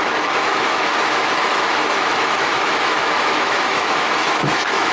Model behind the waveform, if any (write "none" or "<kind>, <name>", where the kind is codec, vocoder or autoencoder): autoencoder, DAC-VAE